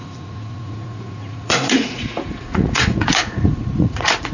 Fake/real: fake